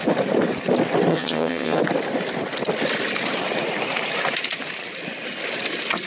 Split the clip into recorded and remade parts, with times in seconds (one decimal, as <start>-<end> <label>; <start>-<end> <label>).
0.0-1.1 recorded; 1.1-1.8 remade; 1.8-6.1 recorded